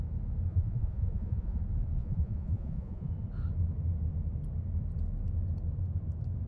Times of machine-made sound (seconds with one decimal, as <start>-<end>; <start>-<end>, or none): 0.5-1.6; 2.0-3.1